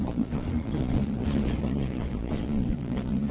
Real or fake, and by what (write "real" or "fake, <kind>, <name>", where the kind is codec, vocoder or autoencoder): fake, vocoder, Vocos